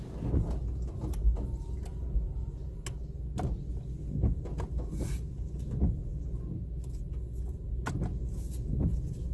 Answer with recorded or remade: recorded